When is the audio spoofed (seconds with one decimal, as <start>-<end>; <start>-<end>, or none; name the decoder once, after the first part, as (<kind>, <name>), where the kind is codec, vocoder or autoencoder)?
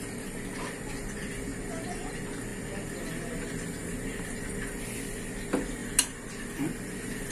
none